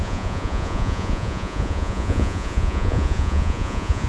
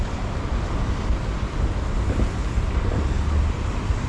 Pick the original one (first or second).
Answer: second